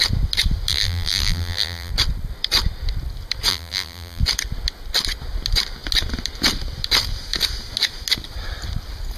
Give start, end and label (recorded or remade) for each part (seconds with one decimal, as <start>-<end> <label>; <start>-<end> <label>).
0.0-0.7 recorded; 0.7-1.9 remade; 1.9-3.5 recorded; 3.5-4.2 remade; 4.2-9.2 recorded